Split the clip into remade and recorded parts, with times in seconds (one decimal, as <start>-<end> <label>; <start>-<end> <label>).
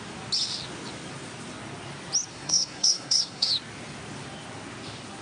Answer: 0.0-2.3 recorded; 2.3-3.5 remade; 3.5-5.2 recorded